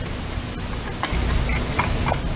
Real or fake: real